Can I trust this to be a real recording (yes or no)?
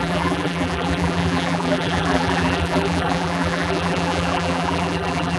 no